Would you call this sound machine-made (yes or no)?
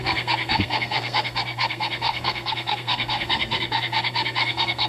yes